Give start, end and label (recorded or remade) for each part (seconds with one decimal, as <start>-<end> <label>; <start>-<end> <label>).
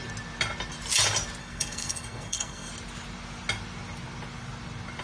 0.0-1.4 recorded; 1.4-2.7 remade; 2.7-5.0 recorded